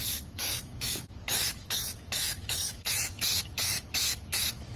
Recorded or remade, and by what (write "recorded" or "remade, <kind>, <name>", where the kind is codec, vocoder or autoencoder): remade, autoencoder, DAC-VAE